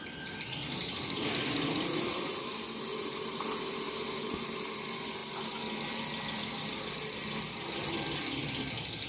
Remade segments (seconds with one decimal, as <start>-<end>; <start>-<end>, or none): none